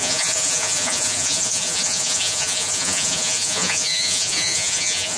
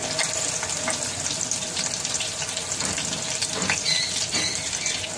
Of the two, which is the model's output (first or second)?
first